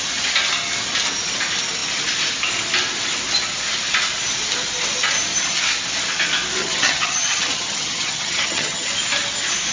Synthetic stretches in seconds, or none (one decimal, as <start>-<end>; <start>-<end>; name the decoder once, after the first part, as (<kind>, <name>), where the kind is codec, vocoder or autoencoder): 6.6-8.9 (vocoder, HiFi-GAN)